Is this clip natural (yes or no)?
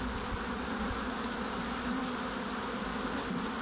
yes